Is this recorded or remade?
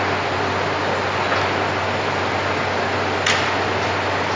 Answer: recorded